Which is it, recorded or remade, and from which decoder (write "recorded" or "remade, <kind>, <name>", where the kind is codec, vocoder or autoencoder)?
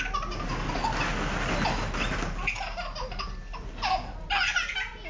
recorded